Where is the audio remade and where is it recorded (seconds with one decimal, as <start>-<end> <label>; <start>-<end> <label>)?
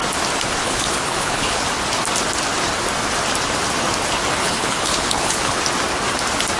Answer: 0.0-0.6 recorded; 0.6-1.6 remade; 1.6-4.4 recorded; 4.4-5.6 remade; 5.6-6.6 recorded